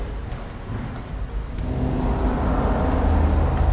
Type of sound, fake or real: real